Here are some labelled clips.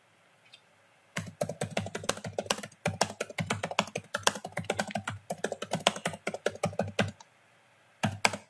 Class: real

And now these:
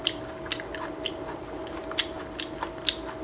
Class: real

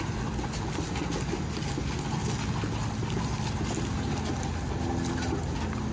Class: real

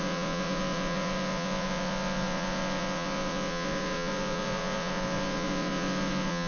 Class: fake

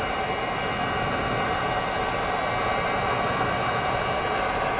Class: real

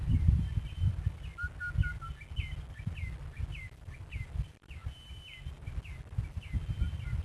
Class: real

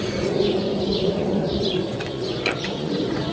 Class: fake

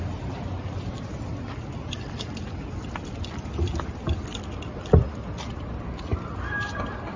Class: real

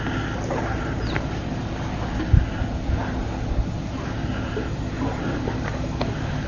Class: real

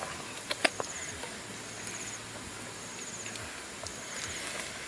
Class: real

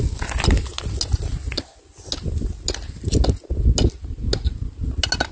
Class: real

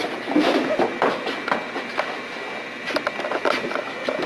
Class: real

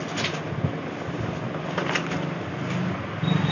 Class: real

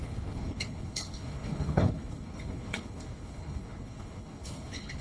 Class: fake